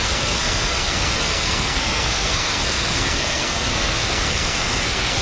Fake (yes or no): yes